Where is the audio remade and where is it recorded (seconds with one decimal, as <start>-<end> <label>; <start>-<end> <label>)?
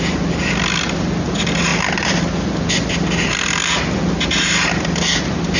0.0-5.6 recorded